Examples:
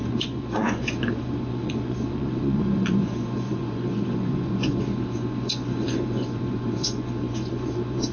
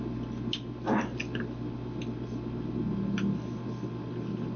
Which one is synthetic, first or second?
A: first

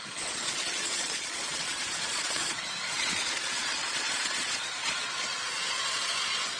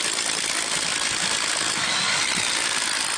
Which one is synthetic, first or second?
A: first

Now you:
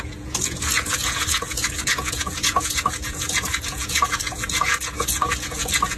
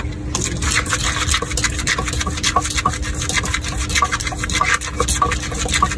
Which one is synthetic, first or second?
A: first